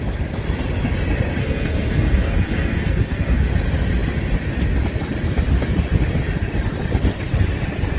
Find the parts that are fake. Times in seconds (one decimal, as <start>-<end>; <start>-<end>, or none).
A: 1.4-3.4